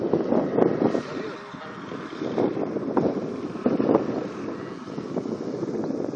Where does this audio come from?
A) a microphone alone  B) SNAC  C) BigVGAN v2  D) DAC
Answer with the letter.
A